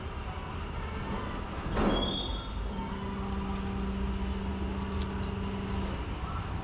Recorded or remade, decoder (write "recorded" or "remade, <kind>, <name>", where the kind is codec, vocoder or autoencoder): recorded